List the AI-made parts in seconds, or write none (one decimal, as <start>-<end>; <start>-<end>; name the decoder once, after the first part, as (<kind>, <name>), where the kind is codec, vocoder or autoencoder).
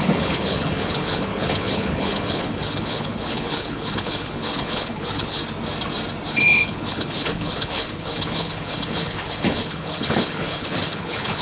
0.0-5.4 (codec, HILCodec); 6.3-11.4